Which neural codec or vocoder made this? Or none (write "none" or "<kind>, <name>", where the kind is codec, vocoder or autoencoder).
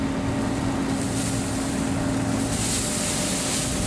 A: none